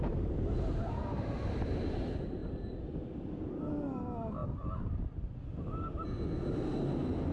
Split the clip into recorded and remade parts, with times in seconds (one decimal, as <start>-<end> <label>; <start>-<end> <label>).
0.0-7.3 recorded